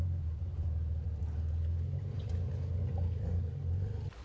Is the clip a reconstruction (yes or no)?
no